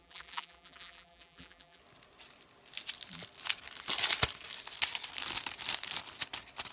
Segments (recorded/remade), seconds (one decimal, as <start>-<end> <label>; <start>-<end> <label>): 0.0-1.8 remade; 1.8-6.7 recorded